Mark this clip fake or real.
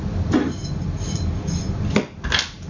real